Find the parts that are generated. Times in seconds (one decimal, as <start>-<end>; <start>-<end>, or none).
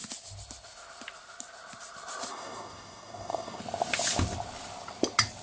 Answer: 2.3-3.6